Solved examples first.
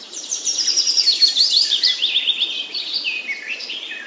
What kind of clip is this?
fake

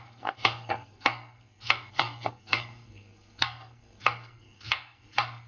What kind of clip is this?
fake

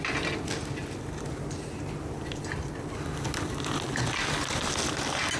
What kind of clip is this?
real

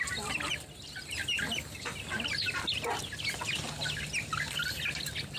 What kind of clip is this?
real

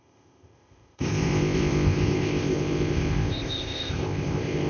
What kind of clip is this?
fake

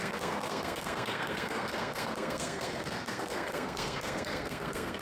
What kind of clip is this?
fake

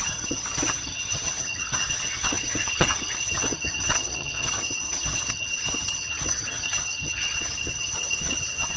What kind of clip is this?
fake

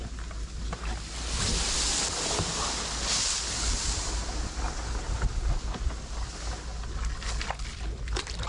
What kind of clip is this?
real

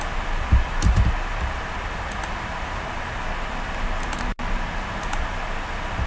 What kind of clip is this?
real